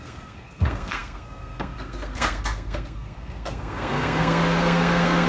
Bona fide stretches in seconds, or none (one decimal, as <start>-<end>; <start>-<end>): none